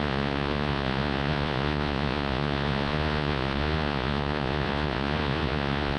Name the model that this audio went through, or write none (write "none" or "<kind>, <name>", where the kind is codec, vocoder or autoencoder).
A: vocoder, Vocos